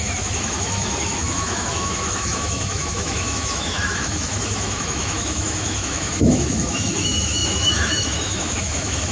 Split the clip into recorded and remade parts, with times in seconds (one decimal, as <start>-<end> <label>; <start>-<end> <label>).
0.0-9.1 remade